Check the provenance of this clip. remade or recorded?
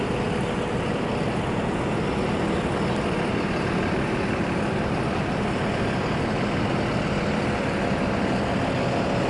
recorded